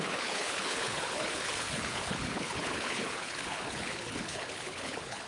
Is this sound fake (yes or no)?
yes